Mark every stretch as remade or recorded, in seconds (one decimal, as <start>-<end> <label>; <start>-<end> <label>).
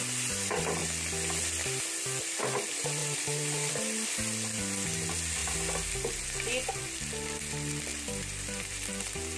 0.0-3.0 recorded; 3.0-3.7 remade; 3.7-7.9 recorded; 7.9-9.4 remade